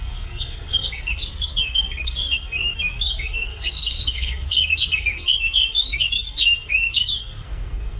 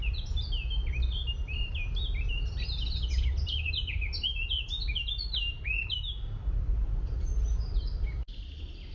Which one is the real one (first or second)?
second